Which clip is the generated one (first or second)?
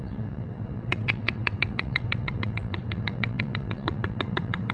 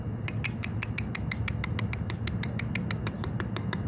first